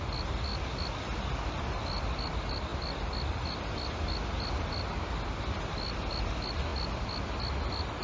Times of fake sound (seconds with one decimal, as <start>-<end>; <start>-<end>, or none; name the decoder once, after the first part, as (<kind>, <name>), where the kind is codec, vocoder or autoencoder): none